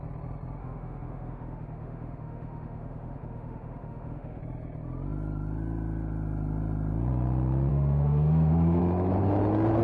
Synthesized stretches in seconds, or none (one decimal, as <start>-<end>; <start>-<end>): 0.6-4.4; 7.7-8.8